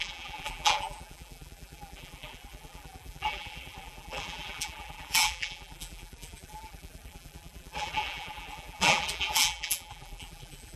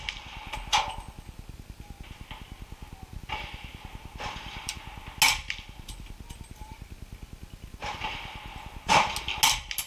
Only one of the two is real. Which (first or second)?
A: second